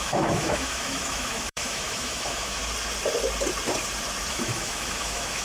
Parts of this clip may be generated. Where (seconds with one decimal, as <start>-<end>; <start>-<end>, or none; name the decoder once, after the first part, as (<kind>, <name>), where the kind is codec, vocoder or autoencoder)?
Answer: 0.0-2.6 (autoencoder, DAC-VAE); 4.3-5.4